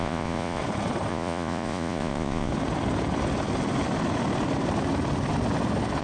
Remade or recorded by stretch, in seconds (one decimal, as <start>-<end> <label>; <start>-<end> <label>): 0.0-0.6 remade; 0.6-1.1 recorded; 1.1-2.5 remade; 2.5-6.0 recorded